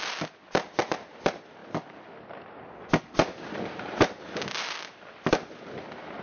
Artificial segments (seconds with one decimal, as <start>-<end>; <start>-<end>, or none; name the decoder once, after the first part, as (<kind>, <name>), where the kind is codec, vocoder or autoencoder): none

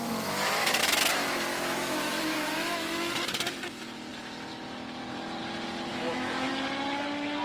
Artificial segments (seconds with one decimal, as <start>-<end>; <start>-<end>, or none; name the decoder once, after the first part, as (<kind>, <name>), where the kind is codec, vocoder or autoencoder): 0.0-0.8 (autoencoder, DAC-VAE); 1.5-3.1; 5.9-6.5

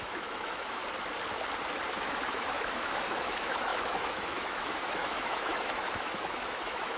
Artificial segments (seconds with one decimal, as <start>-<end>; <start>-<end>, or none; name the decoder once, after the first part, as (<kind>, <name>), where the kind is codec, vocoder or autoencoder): 0.0-0.8 (autoencoder, DAC-VAE); 1.9-7.0

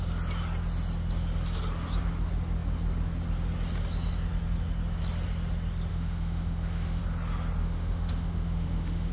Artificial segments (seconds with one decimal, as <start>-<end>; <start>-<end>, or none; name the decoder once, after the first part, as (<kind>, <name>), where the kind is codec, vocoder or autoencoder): 5.9-7.0 (autoencoder, DAC-VAE); 7.6-9.1

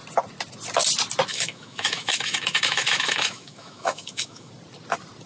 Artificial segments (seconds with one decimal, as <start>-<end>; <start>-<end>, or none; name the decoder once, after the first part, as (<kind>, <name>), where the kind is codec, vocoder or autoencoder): 1.3-4.5 (autoencoder, DAC-VAE)

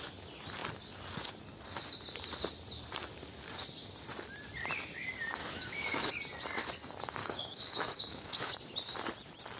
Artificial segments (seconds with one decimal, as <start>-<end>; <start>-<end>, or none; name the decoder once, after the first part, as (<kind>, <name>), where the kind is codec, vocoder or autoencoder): 5.4-6.1 (autoencoder, DAC-VAE); 7.2-8.5

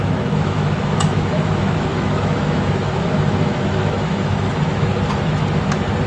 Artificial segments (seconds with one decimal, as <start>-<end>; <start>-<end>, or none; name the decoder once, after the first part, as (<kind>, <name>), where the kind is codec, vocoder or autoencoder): 0.0-4.9 (autoencoder, DAC-VAE)

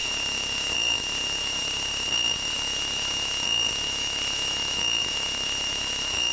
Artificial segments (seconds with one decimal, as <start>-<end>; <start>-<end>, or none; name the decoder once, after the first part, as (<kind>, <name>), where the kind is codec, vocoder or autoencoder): 0.0-1.6 (autoencoder, DAC-VAE); 2.5-6.3